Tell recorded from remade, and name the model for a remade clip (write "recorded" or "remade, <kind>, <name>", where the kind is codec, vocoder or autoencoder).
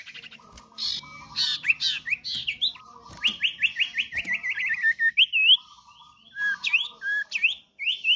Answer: recorded